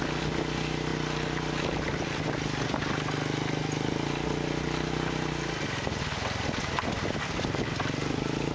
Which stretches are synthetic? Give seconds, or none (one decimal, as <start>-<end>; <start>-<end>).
none